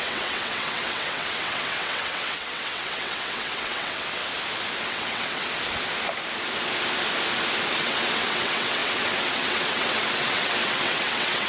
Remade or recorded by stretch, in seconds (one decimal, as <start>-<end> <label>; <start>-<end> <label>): 0.0-4.2 remade; 4.2-4.9 recorded; 4.9-5.4 remade; 5.4-7.7 recorded; 7.7-11.5 remade